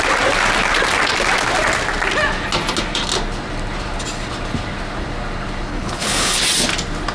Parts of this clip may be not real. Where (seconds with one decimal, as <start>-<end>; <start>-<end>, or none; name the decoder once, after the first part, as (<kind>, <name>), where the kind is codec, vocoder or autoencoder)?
5.7-6.4 (codec, HILCodec)